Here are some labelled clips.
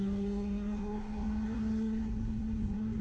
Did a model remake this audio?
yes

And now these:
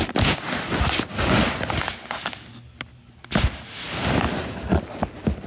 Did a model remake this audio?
no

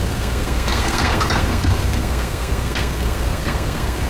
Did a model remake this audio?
yes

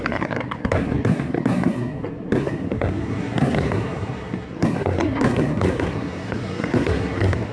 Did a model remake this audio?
yes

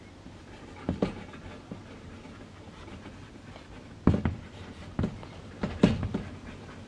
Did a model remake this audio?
no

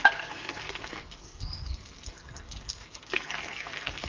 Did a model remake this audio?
yes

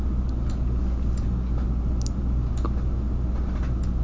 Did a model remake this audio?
no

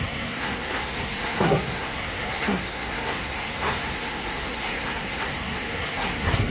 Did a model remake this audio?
yes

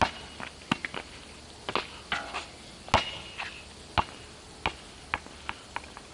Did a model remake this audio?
no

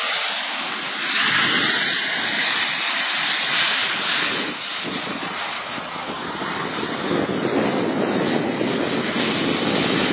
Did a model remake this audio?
no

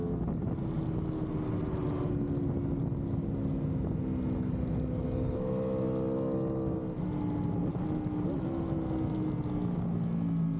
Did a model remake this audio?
no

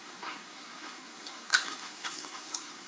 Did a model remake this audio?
yes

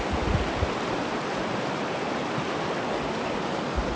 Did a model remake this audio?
no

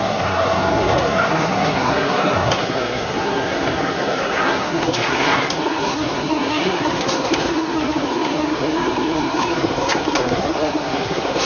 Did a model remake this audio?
yes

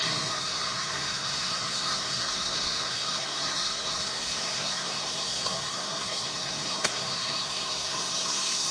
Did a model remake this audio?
yes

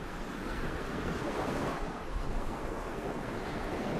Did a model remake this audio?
yes